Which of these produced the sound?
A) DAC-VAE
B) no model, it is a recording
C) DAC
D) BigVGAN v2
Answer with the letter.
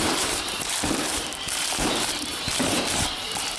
D